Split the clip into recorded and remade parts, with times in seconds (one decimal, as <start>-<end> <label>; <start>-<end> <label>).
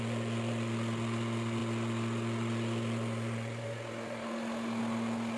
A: 0.0-5.4 recorded